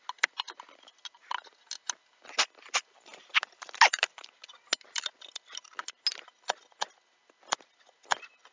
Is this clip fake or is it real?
real